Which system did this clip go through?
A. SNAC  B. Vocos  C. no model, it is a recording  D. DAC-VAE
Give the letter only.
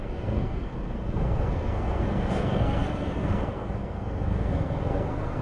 A